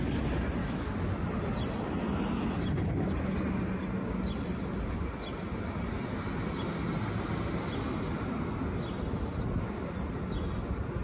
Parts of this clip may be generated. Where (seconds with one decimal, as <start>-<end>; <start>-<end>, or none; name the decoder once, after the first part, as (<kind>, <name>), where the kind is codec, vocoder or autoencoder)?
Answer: 0.6-1.1 (autoencoder, DAC-VAE)